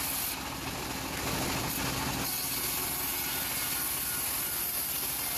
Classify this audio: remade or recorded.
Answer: recorded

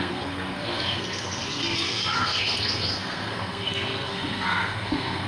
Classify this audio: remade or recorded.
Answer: remade